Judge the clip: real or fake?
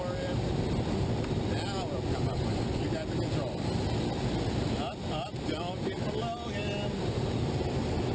real